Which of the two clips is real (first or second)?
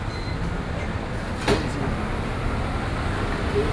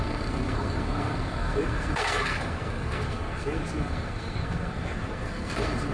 first